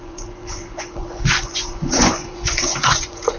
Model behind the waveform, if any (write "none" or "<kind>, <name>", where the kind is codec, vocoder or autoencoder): vocoder, Vocos